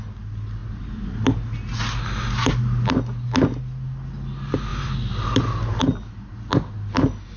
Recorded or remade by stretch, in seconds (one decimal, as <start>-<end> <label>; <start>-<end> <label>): 0.0-7.4 recorded

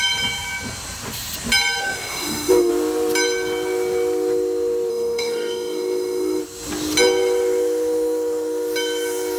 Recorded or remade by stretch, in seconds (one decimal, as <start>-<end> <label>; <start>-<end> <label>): 0.0-1.8 recorded; 1.8-2.7 remade; 2.7-4.9 recorded; 4.9-6.4 remade; 6.4-9.4 recorded